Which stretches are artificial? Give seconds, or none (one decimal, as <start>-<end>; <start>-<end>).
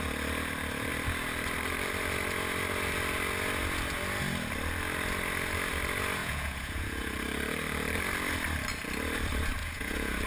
6.2-7.1; 9.6-10.3